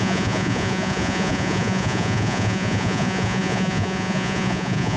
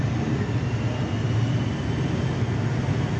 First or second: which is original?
second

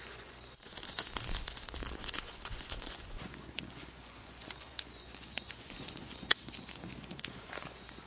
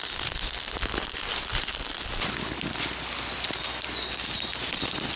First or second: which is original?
second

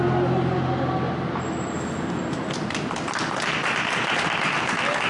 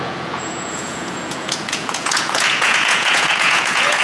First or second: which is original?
first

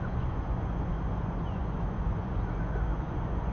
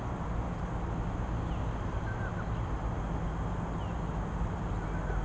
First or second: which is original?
second